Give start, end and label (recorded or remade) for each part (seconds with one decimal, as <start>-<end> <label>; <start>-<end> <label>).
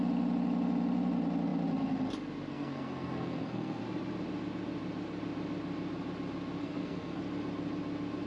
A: 0.0-2.5 recorded; 2.5-3.8 remade; 3.8-6.6 recorded; 6.6-7.2 remade; 7.2-8.3 recorded